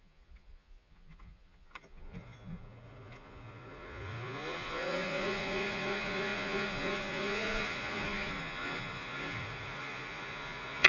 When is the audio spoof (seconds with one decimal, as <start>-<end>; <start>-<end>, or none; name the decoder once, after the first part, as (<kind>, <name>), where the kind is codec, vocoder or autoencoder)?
0.0-10.9 (vocoder, Vocos)